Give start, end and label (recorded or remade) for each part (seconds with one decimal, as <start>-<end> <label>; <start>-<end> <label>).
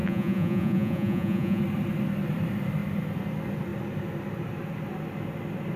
0.0-1.6 remade; 1.6-5.8 recorded